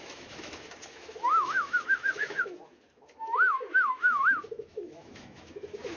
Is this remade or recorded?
remade